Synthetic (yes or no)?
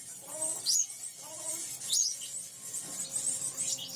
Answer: no